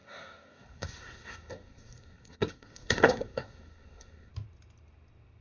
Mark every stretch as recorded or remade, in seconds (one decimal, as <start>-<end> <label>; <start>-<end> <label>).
0.0-4.3 remade; 4.3-5.4 recorded